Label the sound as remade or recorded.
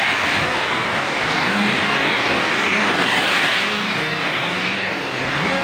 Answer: remade